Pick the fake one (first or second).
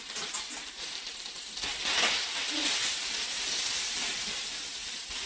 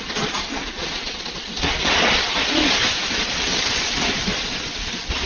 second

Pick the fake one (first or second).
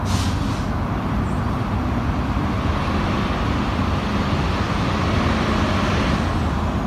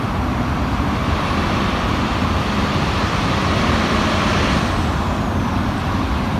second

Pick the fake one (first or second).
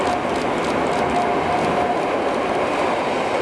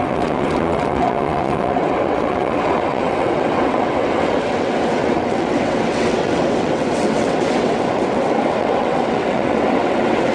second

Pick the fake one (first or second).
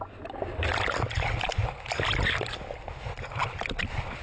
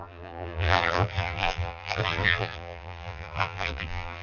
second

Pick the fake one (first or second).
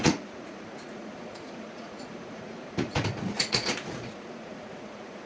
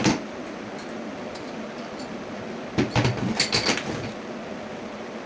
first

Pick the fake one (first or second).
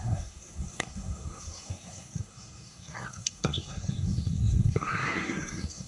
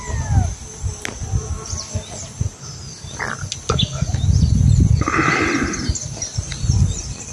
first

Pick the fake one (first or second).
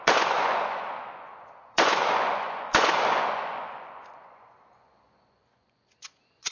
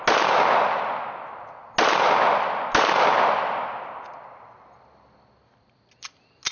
first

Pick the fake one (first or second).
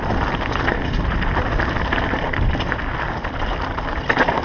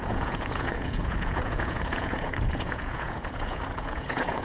second